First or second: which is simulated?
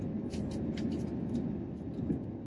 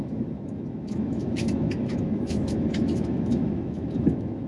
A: second